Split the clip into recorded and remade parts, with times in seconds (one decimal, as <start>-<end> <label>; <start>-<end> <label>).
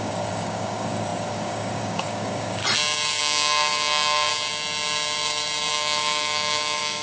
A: 0.0-2.6 remade; 2.6-3.2 recorded; 3.2-4.3 remade; 4.3-5.7 recorded; 5.7-7.0 remade